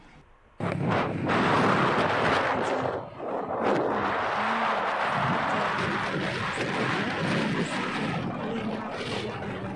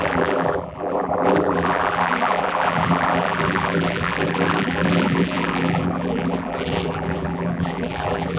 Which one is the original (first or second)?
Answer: first